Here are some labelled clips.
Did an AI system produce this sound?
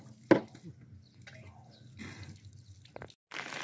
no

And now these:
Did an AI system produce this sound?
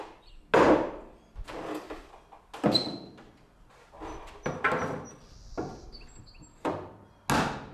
no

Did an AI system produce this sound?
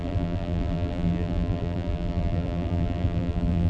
yes